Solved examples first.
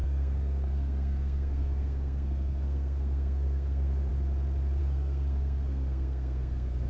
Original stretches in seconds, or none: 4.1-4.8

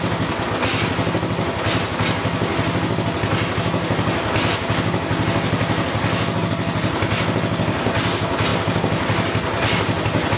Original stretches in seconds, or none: 0.0-10.4

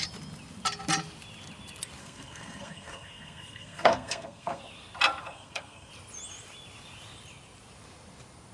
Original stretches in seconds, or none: 0.0-2.0; 4.6-5.2; 5.9-8.5

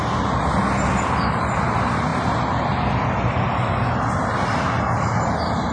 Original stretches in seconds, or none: 0.0-5.7

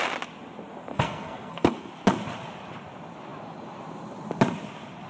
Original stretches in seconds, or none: 0.0-0.9; 1.9-5.1